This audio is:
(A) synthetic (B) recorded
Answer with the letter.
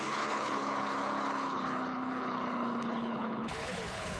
A